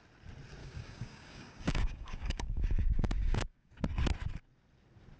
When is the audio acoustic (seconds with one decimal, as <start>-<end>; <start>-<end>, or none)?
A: 0.0-0.6; 3.7-5.2